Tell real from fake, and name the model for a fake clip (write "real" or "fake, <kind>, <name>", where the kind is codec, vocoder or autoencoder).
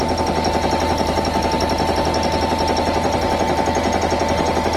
real